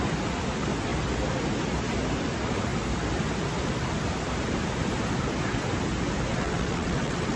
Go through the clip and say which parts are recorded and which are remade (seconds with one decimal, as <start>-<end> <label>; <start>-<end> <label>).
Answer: 0.0-6.3 recorded; 6.3-7.4 remade